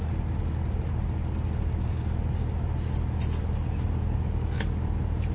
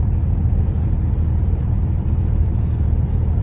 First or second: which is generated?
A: second